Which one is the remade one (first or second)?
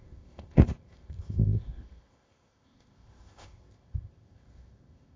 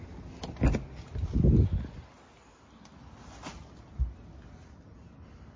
first